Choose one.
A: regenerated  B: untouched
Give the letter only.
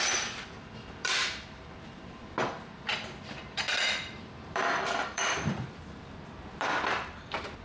A